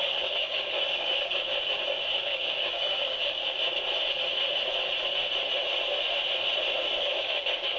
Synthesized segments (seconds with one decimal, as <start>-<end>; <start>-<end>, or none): 0.0-1.5; 2.2-3.4; 7.0-7.8